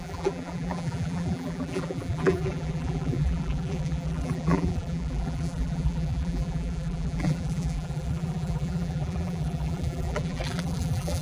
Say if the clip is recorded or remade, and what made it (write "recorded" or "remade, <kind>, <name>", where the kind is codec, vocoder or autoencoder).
remade, vocoder, BigVGAN v2